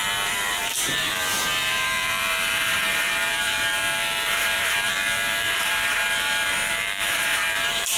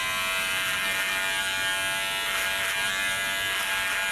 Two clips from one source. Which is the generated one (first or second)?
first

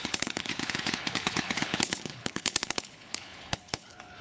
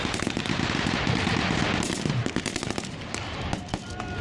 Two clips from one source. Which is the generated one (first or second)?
first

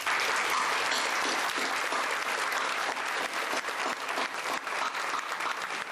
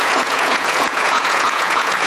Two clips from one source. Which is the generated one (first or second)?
second